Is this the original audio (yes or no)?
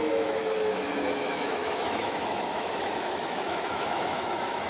no